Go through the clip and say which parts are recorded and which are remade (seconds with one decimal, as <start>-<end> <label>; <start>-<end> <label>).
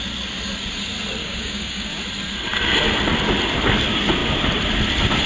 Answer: 0.0-1.2 recorded; 1.2-1.9 remade; 1.9-5.3 recorded